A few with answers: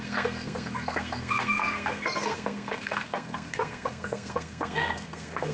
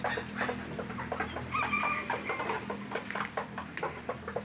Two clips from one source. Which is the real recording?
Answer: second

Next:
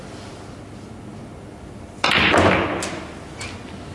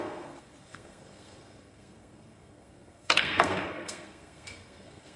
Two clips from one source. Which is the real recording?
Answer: first